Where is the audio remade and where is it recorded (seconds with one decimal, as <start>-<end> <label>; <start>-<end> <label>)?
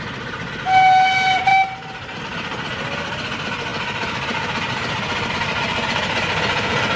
0.0-7.0 recorded